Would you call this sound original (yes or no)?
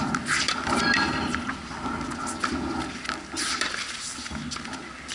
yes